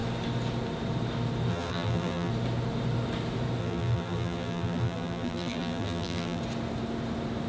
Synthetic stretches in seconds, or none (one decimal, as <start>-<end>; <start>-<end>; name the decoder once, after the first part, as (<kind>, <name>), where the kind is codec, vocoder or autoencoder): 1.5-2.3 (vocoder, BigVGAN v2); 3.6-6.4